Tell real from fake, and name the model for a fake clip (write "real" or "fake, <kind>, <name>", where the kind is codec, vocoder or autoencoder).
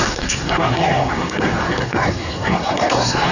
fake, codec, SNAC